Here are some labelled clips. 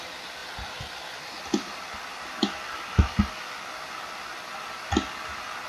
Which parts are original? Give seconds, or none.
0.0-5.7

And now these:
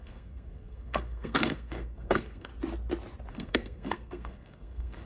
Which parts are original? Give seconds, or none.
2.5-3.3

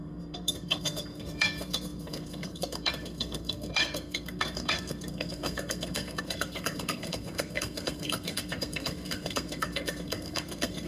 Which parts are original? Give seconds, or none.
none